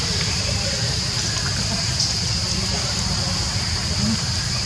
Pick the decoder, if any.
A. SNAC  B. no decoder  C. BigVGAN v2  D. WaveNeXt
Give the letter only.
B